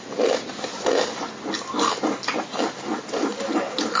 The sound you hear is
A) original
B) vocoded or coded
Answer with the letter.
A